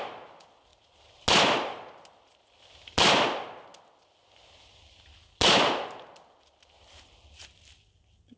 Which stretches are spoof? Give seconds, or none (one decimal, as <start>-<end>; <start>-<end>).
none